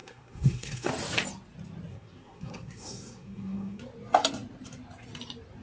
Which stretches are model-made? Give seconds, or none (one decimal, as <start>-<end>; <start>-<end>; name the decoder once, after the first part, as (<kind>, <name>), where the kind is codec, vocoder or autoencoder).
0.0-0.9 (codec, SNAC); 1.9-3.8